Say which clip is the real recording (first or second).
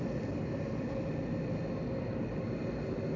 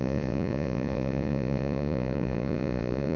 first